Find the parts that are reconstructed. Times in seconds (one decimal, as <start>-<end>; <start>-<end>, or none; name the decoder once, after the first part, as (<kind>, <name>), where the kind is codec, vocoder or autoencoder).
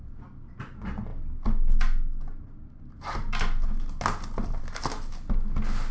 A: none